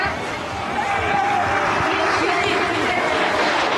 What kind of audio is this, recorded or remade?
remade